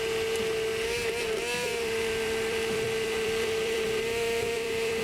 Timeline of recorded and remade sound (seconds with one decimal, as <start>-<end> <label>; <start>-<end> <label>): 0.0-1.7 recorded; 1.7-5.0 remade